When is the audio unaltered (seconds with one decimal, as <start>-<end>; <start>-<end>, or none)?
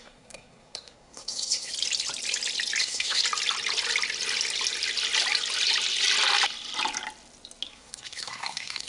1.7-2.8; 3.2-7.7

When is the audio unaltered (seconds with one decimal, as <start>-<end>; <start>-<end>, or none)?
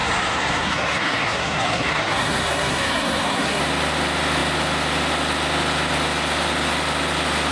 3.6-7.5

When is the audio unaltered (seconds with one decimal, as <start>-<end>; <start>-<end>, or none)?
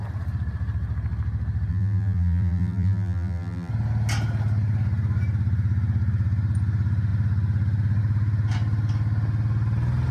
0.0-1.7; 3.7-10.1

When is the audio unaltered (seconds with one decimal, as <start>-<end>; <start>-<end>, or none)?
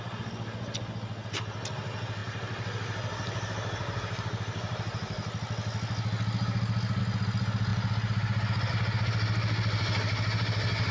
0.0-10.9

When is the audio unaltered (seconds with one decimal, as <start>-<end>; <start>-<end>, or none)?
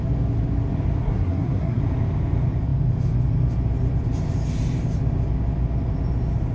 0.0-1.0; 1.8-6.5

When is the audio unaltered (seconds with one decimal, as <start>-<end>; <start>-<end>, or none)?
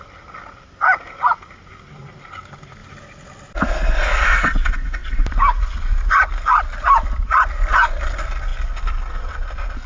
0.0-9.9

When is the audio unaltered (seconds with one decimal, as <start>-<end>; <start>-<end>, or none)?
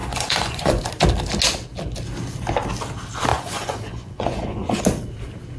0.8-3.3; 4.8-5.6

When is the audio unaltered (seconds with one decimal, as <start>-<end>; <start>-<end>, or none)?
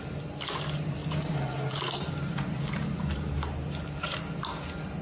0.0-1.0; 4.0-5.0